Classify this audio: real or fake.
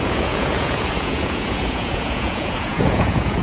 fake